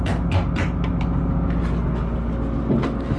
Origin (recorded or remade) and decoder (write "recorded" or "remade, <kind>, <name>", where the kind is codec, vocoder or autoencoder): recorded